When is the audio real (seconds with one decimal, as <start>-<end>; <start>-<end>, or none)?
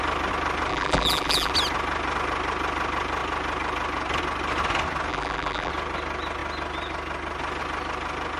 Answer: 0.0-0.7; 1.5-5.1; 5.7-8.4